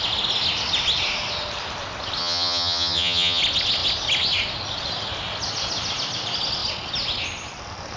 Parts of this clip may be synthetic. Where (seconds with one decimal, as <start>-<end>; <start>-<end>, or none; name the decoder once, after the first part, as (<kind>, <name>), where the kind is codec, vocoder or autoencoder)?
2.2-3.4 (vocoder, HiFi-GAN)